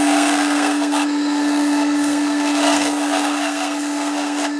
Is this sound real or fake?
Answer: fake